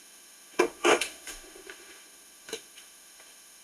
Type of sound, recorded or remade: remade